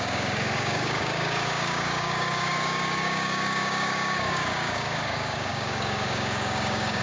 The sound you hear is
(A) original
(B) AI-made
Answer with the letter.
B